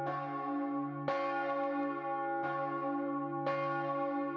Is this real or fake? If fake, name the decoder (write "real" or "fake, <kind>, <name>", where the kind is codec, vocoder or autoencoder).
real